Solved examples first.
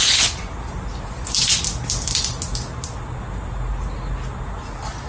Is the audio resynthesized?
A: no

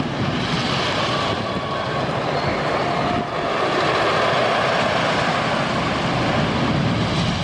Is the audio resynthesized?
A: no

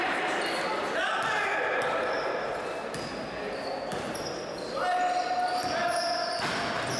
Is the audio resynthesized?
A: no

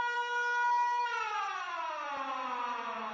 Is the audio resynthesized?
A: no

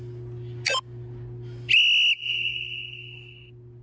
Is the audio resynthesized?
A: no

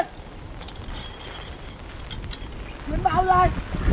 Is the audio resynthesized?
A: no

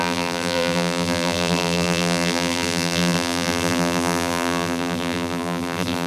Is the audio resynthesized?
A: yes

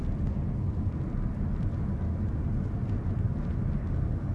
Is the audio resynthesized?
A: no